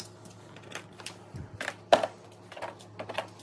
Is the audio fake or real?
real